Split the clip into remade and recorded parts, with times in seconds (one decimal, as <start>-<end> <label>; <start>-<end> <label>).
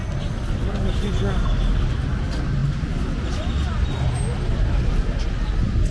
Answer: 0.0-5.9 recorded